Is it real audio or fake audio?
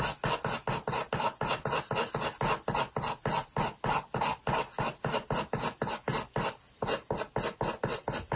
real